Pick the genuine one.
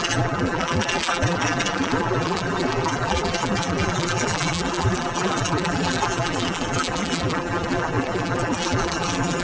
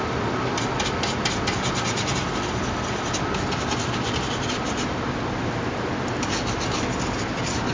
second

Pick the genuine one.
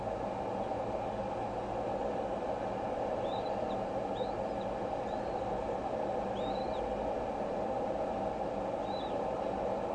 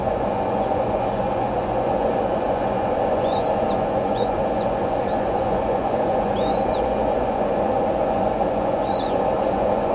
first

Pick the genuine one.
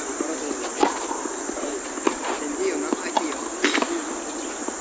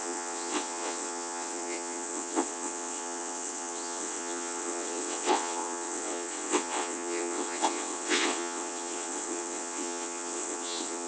first